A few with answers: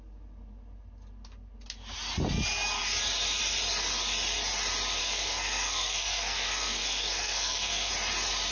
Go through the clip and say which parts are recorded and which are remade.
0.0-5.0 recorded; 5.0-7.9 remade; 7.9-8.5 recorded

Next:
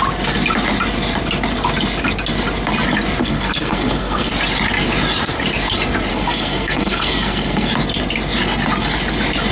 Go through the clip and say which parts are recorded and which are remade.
0.0-3.2 recorded; 3.2-4.3 remade; 4.3-6.1 recorded; 6.1-7.7 remade; 7.7-9.5 recorded